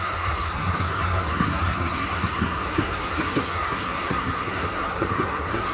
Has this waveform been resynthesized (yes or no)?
yes